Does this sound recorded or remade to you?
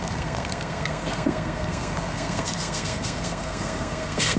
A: remade